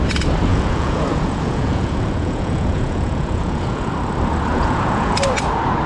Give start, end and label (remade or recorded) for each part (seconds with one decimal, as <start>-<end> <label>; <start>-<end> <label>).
0.0-0.5 recorded; 0.5-3.9 remade; 3.9-4.5 recorded; 4.5-5.2 remade; 5.2-5.9 recorded